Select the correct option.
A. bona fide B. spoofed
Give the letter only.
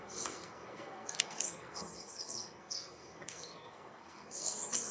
B